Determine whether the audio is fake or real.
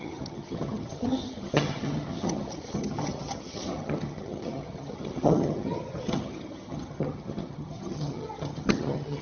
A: fake